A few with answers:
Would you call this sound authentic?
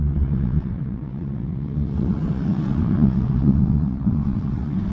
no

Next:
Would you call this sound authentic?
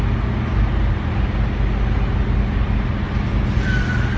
yes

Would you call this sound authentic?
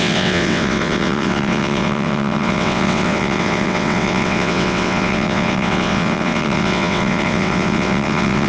no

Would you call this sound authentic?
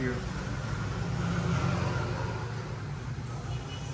yes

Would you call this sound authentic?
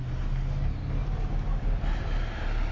yes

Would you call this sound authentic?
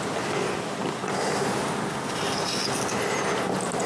yes